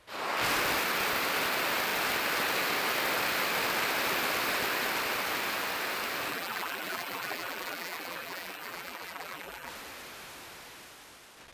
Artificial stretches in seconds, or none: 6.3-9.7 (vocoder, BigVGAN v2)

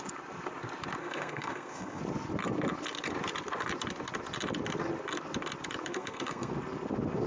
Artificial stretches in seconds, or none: 1.0-2.0 (codec, SNAC); 5.9-6.5

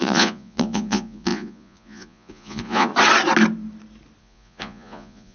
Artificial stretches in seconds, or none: 0.0-2.9 (vocoder, Vocos); 4.2-5.3

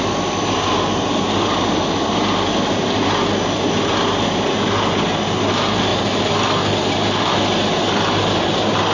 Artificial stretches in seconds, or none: none

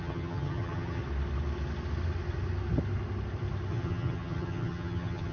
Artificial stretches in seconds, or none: 0.0-1.0 (vocoder, HiFi-GAN); 3.7-5.3

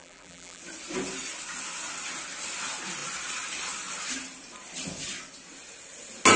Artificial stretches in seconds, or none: 0.0-0.6 (vocoder, BigVGAN v2)